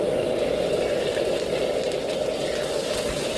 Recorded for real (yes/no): yes